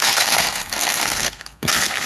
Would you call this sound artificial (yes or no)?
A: yes